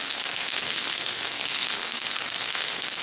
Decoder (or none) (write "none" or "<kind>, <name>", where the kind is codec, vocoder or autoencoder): codec, SNAC